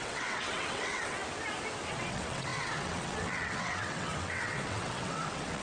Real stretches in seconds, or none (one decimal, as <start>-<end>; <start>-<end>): 1.2-1.9